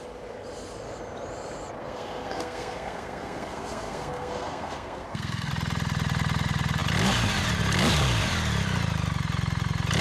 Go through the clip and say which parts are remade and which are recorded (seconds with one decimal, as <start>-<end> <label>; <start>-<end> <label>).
0.0-1.8 recorded; 1.8-5.5 remade; 5.5-10.0 recorded